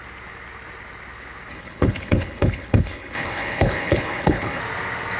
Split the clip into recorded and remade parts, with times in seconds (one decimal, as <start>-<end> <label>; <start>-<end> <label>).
0.0-1.5 recorded; 1.5-4.6 remade; 4.6-5.2 recorded

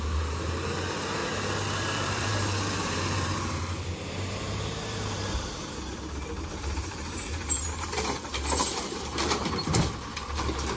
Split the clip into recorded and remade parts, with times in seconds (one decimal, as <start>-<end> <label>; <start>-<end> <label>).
0.0-1.2 remade; 1.2-1.8 recorded; 1.8-10.8 remade

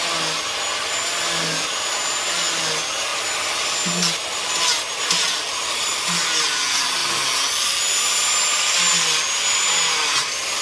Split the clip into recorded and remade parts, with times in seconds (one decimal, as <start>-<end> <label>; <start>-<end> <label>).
0.0-10.6 recorded

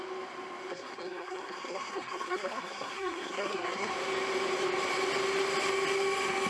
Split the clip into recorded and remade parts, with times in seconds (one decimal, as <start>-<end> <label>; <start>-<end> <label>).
0.0-0.7 recorded; 0.7-3.9 remade; 3.9-6.5 recorded

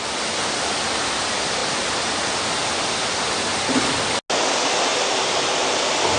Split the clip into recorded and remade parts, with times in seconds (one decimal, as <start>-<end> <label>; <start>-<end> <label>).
0.0-1.6 recorded; 1.6-3.6 remade; 3.6-6.2 recorded

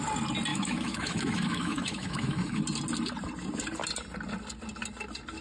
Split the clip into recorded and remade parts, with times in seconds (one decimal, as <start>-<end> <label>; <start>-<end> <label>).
0.0-0.5 recorded; 0.5-2.6 remade; 2.6-5.4 recorded

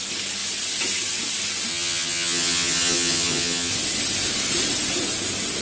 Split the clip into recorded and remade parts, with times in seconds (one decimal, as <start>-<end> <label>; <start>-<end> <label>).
0.0-1.7 recorded; 1.7-3.7 remade; 3.7-5.6 recorded